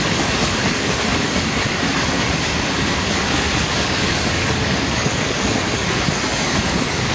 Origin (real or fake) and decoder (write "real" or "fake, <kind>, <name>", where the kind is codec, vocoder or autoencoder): fake, codec, DAC